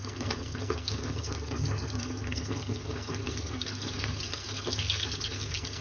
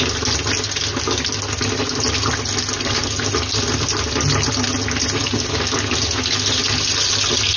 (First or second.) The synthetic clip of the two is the first